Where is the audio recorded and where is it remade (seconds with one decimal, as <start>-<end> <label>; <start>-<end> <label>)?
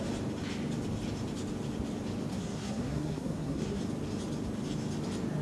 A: 0.0-2.3 recorded; 2.3-3.8 remade; 3.8-5.4 recorded